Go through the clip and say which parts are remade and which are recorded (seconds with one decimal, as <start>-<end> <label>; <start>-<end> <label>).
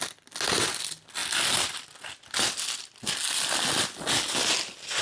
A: 0.0-5.0 recorded